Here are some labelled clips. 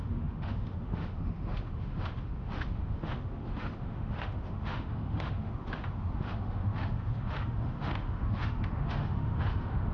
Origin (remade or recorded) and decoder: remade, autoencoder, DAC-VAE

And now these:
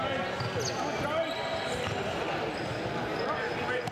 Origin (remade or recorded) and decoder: recorded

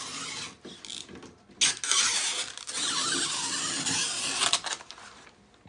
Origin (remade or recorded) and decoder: recorded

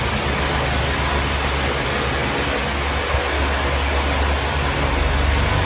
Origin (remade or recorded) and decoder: recorded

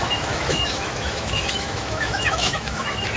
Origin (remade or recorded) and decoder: remade, autoencoder, DAC-VAE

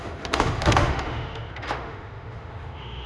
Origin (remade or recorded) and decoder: remade, autoencoder, DAC-VAE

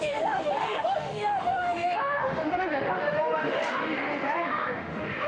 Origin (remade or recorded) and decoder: remade, autoencoder, DAC-VAE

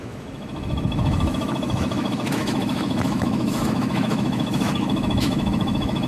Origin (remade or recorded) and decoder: remade, autoencoder, DAC-VAE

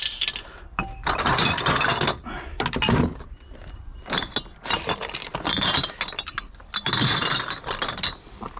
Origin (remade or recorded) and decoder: recorded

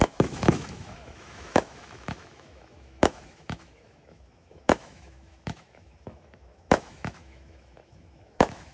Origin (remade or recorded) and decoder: remade, autoencoder, DAC-VAE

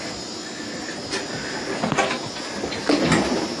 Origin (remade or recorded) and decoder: recorded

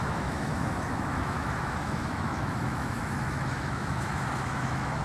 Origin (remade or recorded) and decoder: remade, autoencoder, DAC-VAE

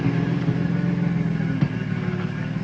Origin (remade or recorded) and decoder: recorded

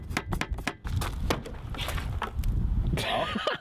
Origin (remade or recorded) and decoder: recorded